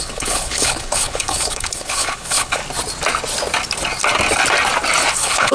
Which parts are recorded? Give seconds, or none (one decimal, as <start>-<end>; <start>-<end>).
2.6-5.1